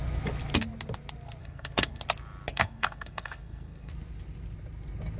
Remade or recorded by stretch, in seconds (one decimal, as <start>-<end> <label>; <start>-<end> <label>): 0.0-1.4 recorded; 1.4-2.0 remade; 2.0-2.5 recorded; 2.5-3.9 remade; 3.9-5.2 recorded